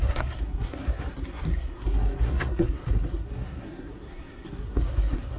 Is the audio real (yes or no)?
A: no